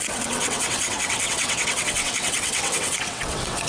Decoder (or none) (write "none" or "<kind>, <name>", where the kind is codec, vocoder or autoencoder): vocoder, WaveNeXt